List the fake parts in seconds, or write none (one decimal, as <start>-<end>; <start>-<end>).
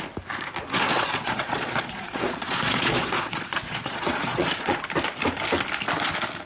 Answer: 0.9-4.8